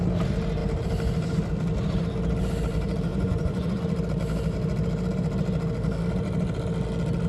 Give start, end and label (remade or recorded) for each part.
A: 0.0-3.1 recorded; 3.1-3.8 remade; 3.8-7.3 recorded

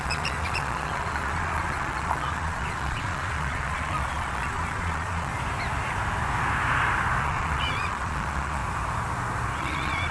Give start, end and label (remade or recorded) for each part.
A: 0.0-5.3 remade; 5.3-7.2 recorded; 7.2-8.6 remade; 8.6-9.6 recorded; 9.6-10.1 remade

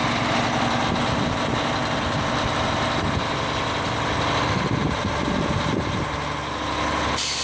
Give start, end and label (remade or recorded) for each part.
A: 0.0-7.4 recorded

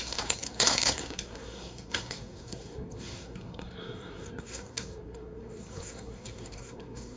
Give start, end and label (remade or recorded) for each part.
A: 0.0-7.2 remade

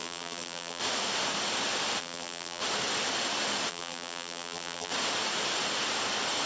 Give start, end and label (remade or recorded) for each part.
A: 0.0-0.8 remade; 0.8-2.0 recorded; 2.0-2.6 remade; 2.6-3.7 recorded; 3.7-4.9 remade; 4.9-6.5 recorded